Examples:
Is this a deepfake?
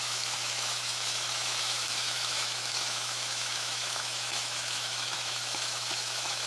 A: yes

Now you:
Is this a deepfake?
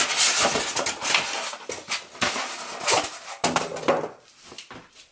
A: no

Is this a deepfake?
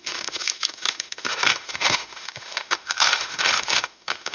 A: yes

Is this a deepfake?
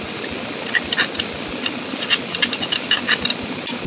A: no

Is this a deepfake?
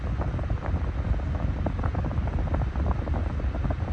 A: no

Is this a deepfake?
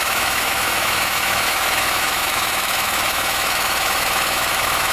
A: yes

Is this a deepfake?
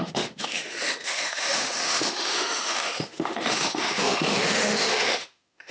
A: yes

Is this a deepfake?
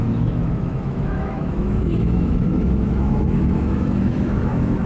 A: yes